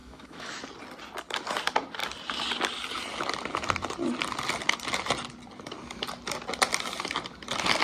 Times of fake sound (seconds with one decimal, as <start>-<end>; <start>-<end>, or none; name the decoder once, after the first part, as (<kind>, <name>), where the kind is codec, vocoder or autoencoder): 0.0-0.6 (autoencoder, DAC-VAE)